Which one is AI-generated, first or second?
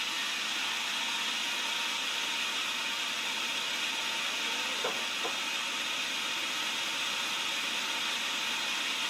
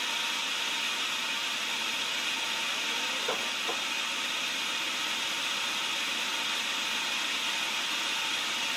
second